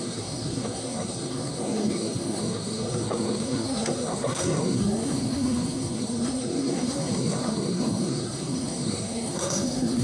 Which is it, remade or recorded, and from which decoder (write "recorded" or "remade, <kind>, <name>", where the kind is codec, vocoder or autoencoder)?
remade, codec, SNAC